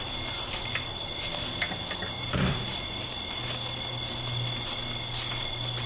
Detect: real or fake real